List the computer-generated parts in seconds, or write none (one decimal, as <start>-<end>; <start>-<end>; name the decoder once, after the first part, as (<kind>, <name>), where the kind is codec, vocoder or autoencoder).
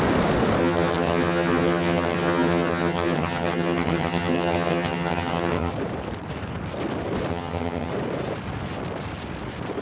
0.6-5.7 (vocoder, HiFi-GAN); 7.3-7.9